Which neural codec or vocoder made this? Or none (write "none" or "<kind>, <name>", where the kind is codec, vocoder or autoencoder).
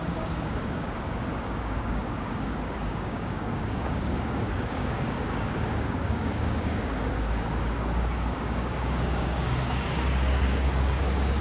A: codec, DAC